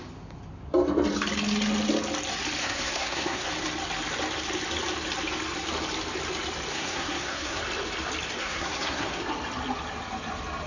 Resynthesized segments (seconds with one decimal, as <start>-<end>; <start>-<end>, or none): 2.6-3.5; 6.7-7.6; 8.4-9.2